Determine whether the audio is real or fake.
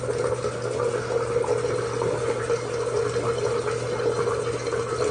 real